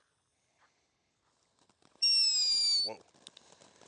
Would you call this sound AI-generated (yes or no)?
no